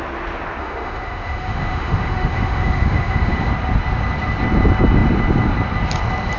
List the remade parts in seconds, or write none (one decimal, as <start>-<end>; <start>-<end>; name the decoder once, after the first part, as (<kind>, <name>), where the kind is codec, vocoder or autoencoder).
0.6-3.5 (autoencoder, DAC-VAE)